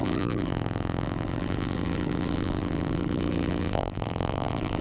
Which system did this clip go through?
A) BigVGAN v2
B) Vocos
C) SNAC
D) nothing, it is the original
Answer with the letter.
A